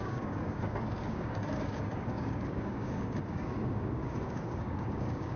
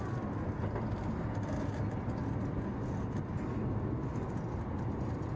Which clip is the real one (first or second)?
second